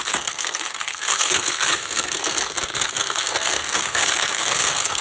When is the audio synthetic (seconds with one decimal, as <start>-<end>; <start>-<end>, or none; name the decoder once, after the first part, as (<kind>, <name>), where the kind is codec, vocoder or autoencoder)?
0.0-5.0 (codec, SNAC)